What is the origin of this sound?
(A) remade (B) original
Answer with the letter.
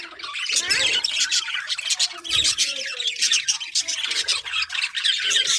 B